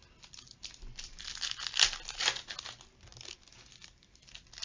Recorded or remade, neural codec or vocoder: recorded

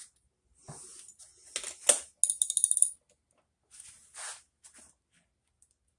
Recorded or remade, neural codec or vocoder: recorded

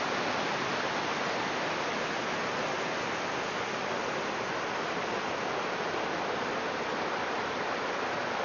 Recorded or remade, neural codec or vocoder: recorded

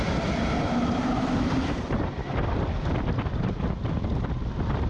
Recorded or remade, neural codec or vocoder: recorded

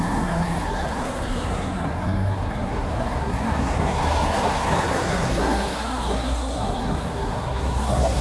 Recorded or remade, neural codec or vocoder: remade, codec, SNAC